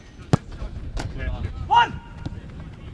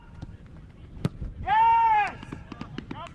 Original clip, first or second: first